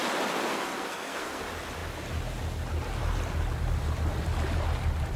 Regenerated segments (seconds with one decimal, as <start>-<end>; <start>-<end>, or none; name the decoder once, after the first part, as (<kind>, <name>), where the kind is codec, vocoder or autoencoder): 0.5-1.4 (codec, SNAC)